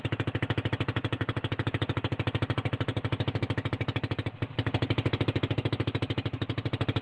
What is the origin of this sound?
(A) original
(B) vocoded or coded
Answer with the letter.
A